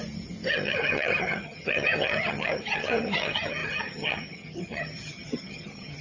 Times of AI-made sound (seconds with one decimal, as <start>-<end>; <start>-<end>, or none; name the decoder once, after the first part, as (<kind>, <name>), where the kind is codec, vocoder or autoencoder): 0.5-6.0 (vocoder, HiFi-GAN)